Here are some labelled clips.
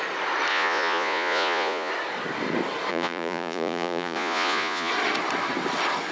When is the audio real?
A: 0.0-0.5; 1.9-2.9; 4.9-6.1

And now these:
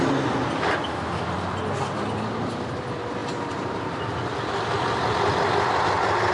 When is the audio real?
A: 0.0-6.3

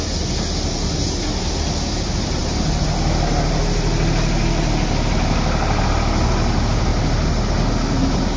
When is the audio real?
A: 0.0-8.4

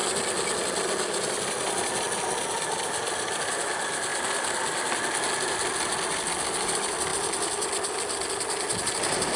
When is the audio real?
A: 0.0-9.4

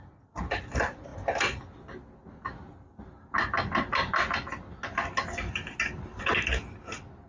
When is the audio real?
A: 0.0-7.3